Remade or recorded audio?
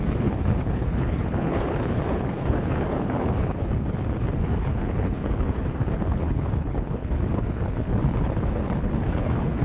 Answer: remade